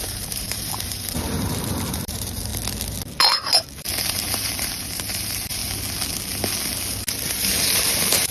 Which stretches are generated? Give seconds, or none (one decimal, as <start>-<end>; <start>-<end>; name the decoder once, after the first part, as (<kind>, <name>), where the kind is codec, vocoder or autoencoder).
0.0-2.5 (vocoder, BigVGAN v2); 3.8-5.6; 7.3-8.3